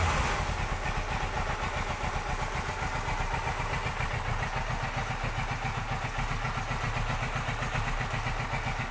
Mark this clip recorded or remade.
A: recorded